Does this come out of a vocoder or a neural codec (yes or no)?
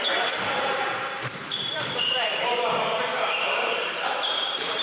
yes